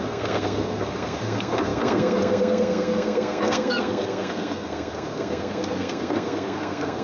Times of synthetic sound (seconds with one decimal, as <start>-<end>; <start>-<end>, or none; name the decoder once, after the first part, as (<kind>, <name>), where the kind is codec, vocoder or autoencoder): 0.0-7.0 (codec, SNAC)